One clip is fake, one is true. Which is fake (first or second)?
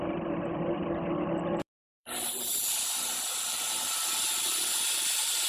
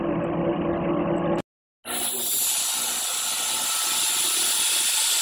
first